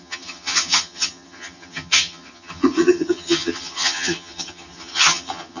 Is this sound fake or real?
fake